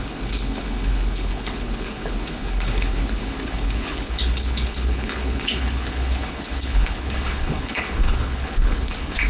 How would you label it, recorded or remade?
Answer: remade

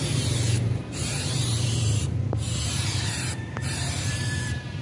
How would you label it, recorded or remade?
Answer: remade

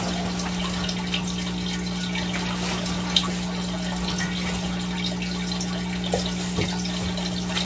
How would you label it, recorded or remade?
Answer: recorded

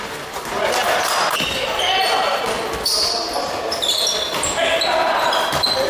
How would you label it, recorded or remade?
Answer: remade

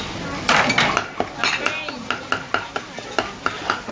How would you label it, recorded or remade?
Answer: recorded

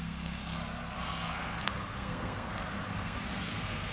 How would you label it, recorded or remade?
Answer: remade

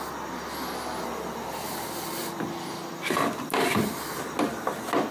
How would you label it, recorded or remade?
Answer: recorded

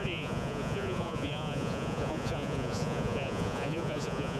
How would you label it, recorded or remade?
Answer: remade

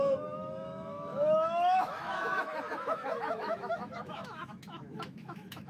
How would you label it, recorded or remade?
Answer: remade